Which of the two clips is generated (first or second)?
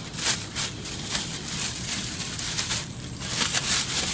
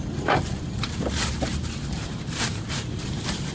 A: second